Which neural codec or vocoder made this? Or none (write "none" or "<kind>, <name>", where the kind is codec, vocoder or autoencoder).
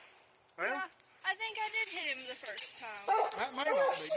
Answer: vocoder, BigVGAN v2